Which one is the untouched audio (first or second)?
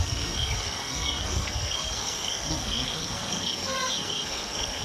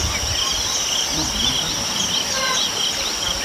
second